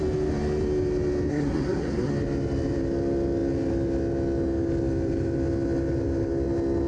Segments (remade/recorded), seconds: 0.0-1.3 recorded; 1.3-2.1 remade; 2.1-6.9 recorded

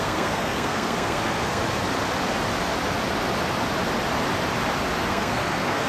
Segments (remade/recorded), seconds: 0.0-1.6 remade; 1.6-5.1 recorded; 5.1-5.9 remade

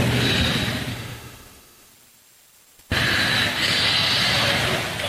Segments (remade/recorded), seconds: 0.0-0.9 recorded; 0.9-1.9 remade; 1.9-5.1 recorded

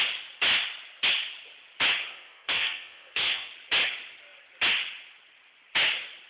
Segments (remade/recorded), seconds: 0.0-2.1 recorded; 2.1-3.5 remade; 3.5-6.3 recorded

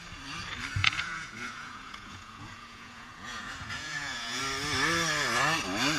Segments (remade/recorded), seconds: 0.0-0.8 recorded; 0.8-4.4 remade; 4.4-6.0 recorded

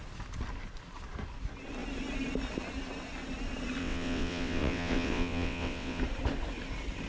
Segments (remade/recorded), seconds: 0.0-3.8 recorded; 3.8-6.0 remade; 6.0-7.1 recorded

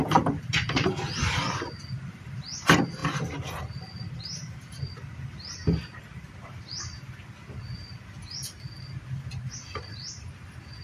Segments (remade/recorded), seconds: 0.0-0.9 remade; 0.9-3.0 recorded; 3.0-4.8 remade; 4.8-10.8 recorded